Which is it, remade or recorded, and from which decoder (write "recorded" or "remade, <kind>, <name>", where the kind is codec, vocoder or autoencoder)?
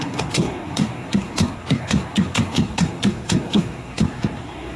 remade, codec, SNAC